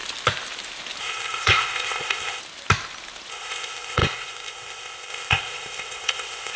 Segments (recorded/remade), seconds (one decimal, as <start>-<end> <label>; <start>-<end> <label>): 0.0-1.0 recorded; 1.0-2.4 remade; 2.4-3.3 recorded; 3.3-6.6 remade